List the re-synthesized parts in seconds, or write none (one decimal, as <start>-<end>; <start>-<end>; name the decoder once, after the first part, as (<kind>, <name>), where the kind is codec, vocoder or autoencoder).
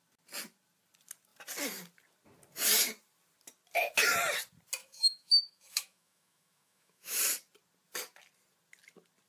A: 4.8-7.2 (autoencoder, DAC-VAE)